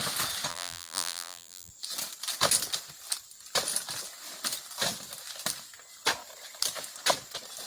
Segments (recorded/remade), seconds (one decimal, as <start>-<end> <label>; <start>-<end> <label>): 0.0-0.5 recorded; 0.5-1.7 remade; 1.7-7.7 recorded